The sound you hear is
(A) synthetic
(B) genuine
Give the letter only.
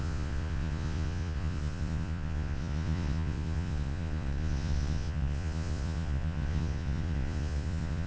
A